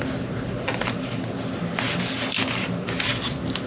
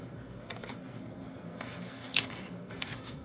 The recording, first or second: first